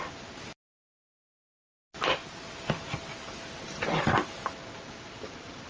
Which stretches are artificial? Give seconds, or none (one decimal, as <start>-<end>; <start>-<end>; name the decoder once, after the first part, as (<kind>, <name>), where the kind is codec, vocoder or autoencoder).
none